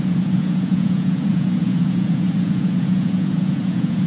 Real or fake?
fake